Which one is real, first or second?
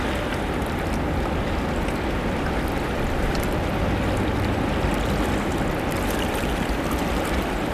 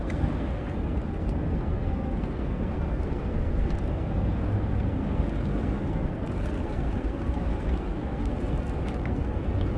first